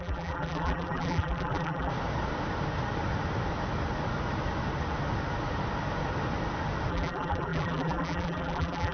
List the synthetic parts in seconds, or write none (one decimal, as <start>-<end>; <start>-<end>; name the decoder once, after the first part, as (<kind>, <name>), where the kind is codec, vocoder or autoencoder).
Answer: 0.0-1.9 (vocoder, BigVGAN v2); 6.9-8.9